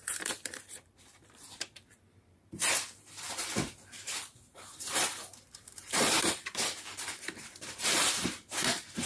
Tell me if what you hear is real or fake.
fake